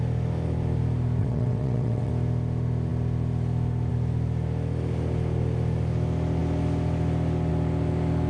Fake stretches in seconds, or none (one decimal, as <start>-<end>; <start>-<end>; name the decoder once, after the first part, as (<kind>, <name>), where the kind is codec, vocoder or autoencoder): 1.2-2.1 (vocoder, WaveNeXt)